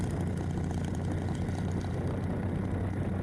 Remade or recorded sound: recorded